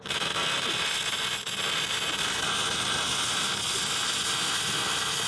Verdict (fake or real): real